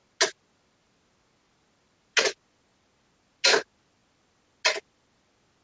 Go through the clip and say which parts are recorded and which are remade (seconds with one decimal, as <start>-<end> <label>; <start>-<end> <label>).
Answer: 0.0-5.6 recorded